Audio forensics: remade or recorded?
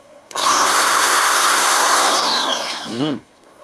remade